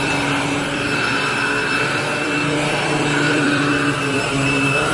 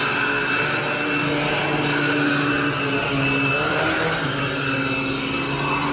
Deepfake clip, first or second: first